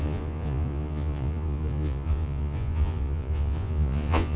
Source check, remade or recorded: remade